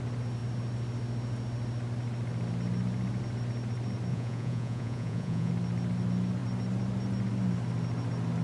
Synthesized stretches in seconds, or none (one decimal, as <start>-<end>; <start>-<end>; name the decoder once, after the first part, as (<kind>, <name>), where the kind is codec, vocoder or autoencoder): 4.1-5.5 (vocoder, Vocos)